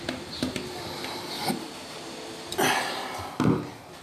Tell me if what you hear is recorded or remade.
recorded